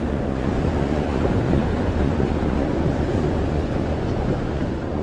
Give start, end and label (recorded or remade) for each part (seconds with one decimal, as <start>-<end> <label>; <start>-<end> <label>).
0.0-5.0 remade